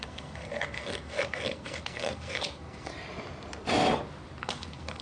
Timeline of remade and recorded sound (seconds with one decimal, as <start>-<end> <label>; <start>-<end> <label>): 0.0-2.9 remade; 2.9-4.4 recorded; 4.4-5.0 remade